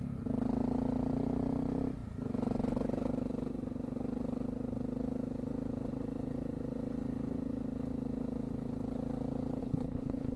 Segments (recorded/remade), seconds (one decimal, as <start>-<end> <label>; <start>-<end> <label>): 0.0-9.6 recorded; 9.6-10.4 remade